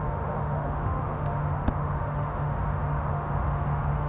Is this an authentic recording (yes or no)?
no